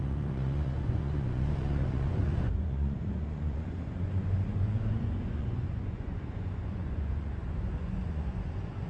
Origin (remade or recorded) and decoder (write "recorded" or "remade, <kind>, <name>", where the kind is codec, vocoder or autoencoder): remade, vocoder, Vocos